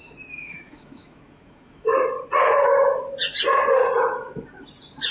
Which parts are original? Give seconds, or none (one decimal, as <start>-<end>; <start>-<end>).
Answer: 1.9-5.1